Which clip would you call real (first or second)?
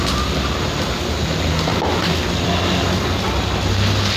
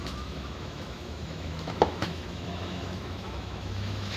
first